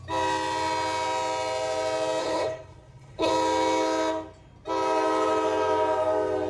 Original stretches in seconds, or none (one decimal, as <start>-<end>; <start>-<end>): 0.0-2.2; 3.3-6.5